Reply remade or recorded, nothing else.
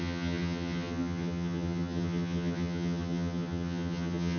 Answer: remade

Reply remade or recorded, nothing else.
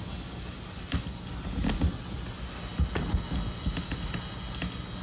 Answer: recorded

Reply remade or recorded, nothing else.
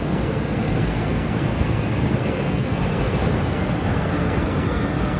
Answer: remade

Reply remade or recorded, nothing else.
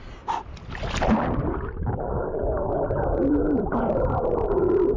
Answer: remade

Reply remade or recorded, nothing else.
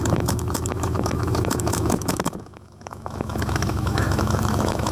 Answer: remade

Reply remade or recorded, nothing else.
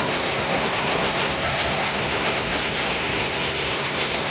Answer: remade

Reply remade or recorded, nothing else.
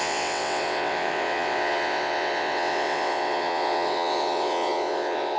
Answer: remade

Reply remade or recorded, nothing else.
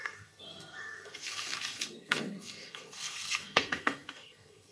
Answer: remade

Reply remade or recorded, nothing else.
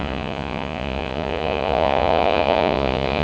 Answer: remade